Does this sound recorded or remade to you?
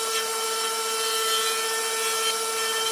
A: recorded